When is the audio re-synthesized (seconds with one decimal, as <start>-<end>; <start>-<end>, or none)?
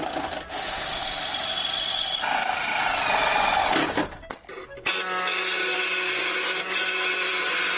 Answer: none